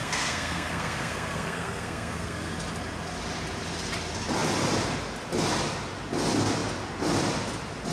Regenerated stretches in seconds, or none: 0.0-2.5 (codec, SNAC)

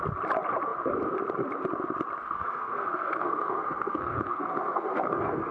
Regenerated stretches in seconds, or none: 2.2-5.5 (codec, SNAC)

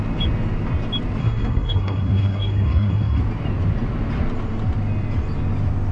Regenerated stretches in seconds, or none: 1.2-3.2 (codec, SNAC)

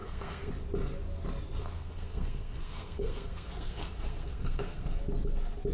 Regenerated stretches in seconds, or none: 0.0-0.5 (codec, SNAC); 1.6-5.0

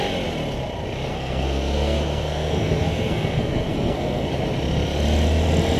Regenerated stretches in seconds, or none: 1.1-4.3 (codec, SNAC)

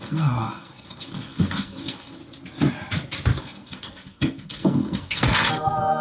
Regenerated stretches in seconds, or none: 0.0-2.2 (codec, SNAC); 3.4-6.0

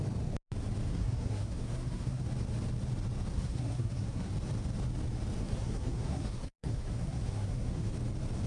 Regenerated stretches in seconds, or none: 0.9-2.2 (codec, SNAC); 3.3-4.3; 5.4-7.9

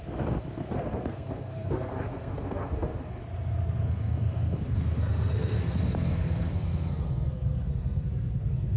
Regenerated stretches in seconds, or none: 0.0-3.2 (codec, SNAC); 3.8-8.8